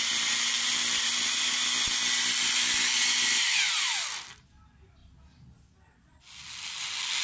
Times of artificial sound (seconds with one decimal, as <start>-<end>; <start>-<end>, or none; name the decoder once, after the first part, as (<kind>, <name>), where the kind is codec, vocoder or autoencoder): none